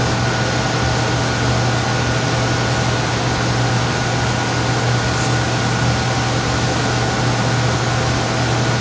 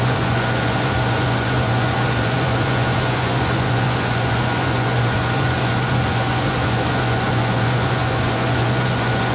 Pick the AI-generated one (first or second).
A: second